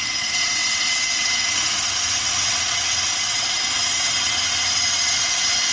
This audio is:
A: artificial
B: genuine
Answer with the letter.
A